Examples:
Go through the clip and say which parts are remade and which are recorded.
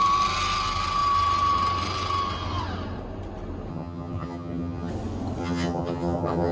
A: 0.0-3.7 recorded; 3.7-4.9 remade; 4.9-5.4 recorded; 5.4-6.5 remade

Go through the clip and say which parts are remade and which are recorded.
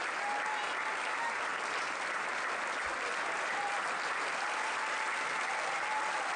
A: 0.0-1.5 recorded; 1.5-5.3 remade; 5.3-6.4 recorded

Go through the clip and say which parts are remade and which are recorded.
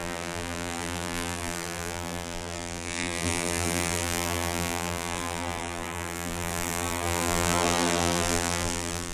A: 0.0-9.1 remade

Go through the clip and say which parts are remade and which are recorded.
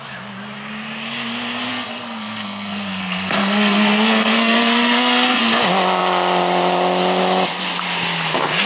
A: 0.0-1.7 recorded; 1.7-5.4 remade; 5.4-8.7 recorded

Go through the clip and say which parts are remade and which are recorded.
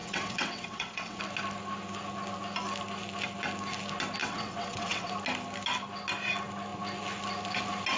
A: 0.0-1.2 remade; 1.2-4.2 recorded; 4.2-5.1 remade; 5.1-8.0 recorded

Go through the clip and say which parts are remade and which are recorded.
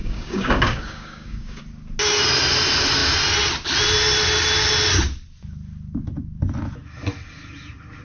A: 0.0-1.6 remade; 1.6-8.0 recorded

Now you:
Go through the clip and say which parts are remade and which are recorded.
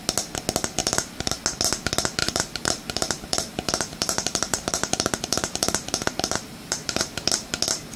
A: 0.0-0.8 recorded; 0.8-1.4 remade; 1.4-2.2 recorded; 2.2-7.0 remade; 7.0-8.0 recorded